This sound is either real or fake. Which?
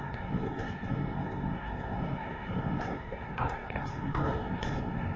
fake